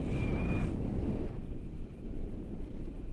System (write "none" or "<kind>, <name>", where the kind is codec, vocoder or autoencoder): none